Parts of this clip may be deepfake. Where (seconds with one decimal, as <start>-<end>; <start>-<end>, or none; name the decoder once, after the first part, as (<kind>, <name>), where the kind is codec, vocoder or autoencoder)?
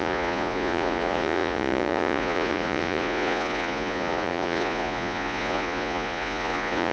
0.0-6.9 (vocoder, Vocos)